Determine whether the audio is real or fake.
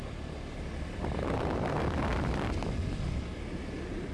real